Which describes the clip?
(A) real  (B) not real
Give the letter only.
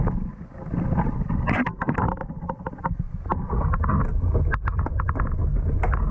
A